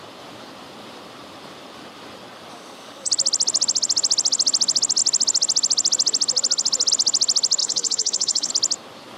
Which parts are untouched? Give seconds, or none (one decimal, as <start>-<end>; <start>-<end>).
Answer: 0.0-2.5; 3.1-7.6; 8.5-9.2